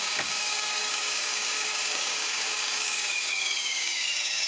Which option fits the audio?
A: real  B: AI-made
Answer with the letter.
B